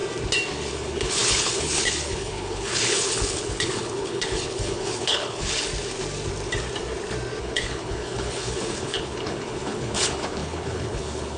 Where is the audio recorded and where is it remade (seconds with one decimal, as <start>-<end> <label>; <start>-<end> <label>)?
0.0-0.7 recorded; 0.7-5.7 remade; 5.7-7.4 recorded; 7.4-11.4 remade